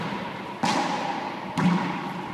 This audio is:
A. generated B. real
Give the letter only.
B